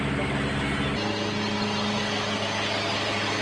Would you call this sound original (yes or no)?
yes